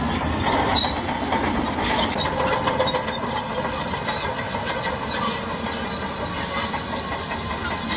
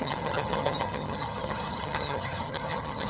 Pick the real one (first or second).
first